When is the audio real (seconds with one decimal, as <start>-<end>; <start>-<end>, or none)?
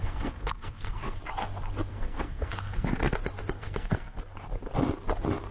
1.2-1.9; 3.1-3.6; 4.2-5.5